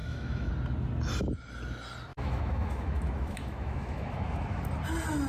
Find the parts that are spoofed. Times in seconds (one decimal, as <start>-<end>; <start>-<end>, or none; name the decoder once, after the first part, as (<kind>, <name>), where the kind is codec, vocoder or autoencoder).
0.0-0.5 (autoencoder, DAC-VAE); 2.1-4.6